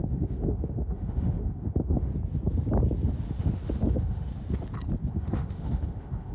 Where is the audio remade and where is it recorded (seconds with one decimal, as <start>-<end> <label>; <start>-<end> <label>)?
0.0-2.1 remade; 2.1-3.4 recorded; 3.4-4.3 remade; 4.3-5.1 recorded; 5.1-6.3 remade